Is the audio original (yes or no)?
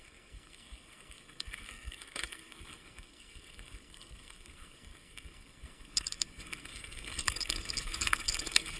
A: no